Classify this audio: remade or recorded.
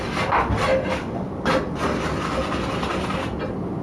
recorded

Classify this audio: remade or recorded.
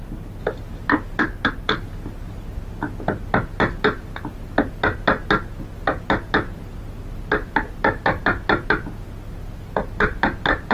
recorded